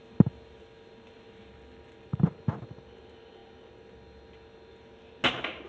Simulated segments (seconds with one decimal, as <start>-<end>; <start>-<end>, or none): none